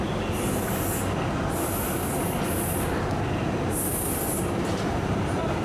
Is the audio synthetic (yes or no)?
no